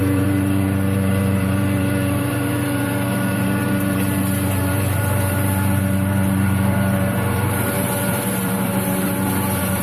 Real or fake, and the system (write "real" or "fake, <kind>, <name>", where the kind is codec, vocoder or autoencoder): fake, vocoder, BigVGAN v2